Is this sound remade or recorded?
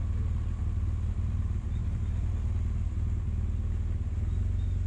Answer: recorded